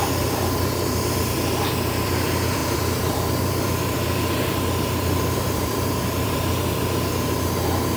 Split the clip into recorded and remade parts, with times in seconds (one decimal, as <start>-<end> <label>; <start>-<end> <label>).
0.0-8.0 remade